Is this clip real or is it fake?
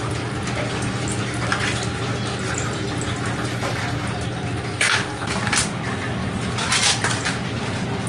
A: real